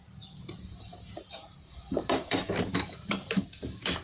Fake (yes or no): yes